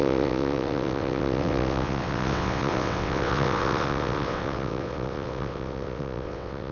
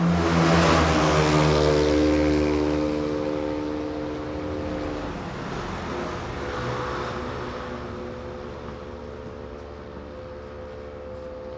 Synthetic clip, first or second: first